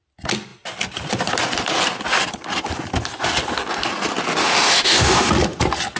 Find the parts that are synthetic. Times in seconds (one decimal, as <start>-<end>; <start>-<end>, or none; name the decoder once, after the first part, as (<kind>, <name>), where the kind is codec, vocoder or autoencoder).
4.4-5.3 (autoencoder, DAC-VAE)